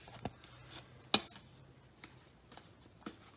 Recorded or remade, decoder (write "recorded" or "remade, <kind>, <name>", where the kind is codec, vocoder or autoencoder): recorded